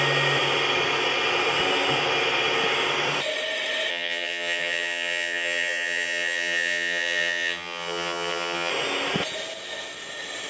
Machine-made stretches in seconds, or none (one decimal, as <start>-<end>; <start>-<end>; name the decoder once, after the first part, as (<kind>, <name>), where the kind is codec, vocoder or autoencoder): 3.9-8.7 (vocoder, HiFi-GAN)